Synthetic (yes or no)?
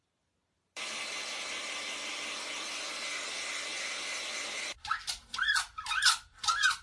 no